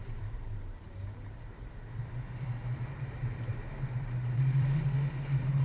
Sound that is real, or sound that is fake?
fake